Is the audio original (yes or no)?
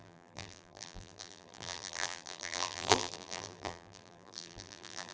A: no